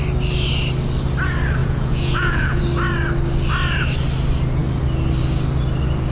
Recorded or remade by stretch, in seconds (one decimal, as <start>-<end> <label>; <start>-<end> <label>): 0.0-1.6 recorded; 1.6-2.6 remade; 2.6-6.1 recorded